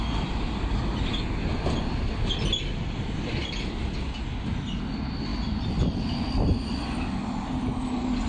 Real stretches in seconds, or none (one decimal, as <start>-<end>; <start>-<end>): 0.0-8.3